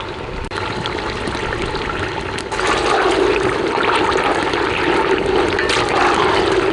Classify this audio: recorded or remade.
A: recorded